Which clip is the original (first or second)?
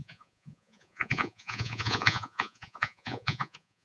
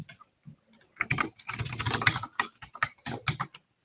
second